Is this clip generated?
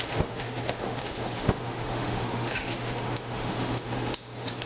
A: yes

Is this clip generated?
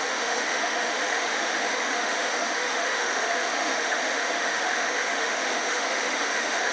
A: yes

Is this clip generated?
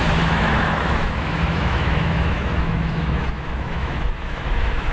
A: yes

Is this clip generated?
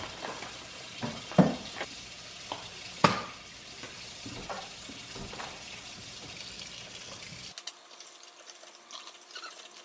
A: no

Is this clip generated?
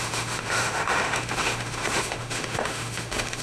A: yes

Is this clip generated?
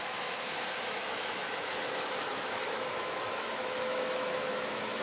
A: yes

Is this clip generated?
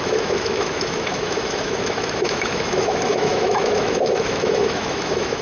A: yes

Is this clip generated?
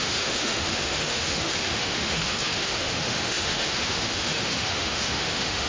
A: yes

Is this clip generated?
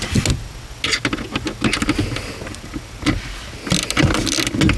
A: no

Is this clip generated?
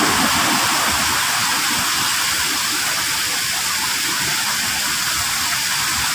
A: no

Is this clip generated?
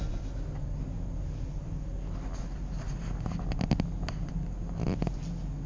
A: no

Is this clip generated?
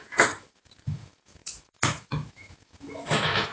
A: yes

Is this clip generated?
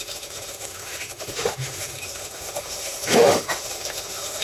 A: yes